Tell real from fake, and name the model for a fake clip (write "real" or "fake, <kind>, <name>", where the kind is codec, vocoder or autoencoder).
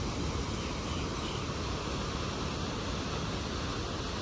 real